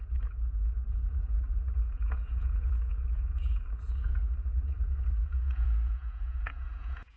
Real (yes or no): no